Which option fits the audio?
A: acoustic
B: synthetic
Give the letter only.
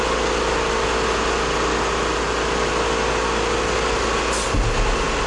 A